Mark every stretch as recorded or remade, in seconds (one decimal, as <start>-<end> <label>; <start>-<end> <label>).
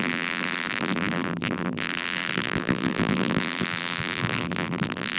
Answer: 0.0-5.2 remade